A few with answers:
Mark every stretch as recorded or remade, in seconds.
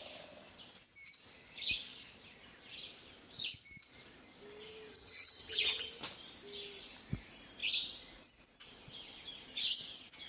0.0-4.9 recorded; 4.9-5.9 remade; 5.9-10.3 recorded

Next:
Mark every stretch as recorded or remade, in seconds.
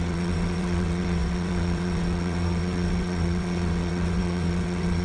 0.0-5.0 remade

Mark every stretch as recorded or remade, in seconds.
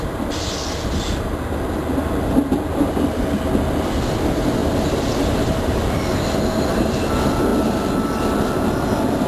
0.0-4.6 recorded; 4.6-6.2 remade; 6.2-9.3 recorded